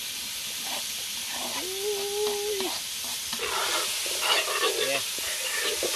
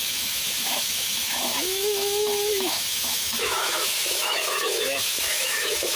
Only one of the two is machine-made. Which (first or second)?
second